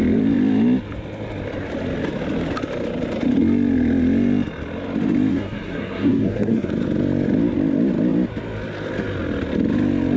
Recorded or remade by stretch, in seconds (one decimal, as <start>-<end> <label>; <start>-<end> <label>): 0.0-5.3 recorded; 5.3-6.7 remade; 6.7-10.2 recorded